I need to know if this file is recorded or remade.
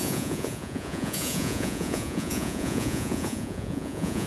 remade